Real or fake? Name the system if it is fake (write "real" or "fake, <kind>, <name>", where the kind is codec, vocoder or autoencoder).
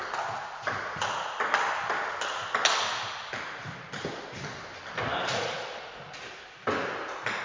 real